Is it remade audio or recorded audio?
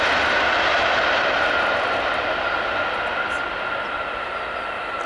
recorded